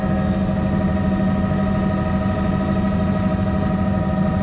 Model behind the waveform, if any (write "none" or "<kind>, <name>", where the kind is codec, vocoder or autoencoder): none